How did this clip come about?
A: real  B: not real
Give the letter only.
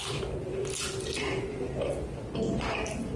A